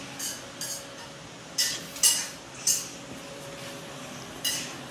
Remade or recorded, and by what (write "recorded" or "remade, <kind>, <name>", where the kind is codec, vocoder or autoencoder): recorded